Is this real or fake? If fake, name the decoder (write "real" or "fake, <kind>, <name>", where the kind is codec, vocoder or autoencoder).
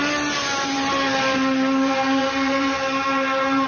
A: fake, vocoder, BigVGAN v2